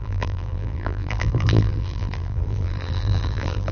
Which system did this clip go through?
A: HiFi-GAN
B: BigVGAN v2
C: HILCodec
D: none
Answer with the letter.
B